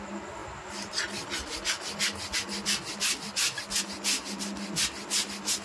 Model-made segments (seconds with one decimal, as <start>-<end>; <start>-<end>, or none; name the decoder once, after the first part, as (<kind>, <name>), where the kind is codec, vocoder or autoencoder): none